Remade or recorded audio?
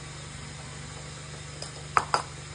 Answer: recorded